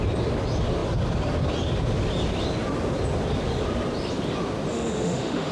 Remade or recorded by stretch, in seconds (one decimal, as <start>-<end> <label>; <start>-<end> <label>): 0.0-4.7 recorded; 4.7-5.5 remade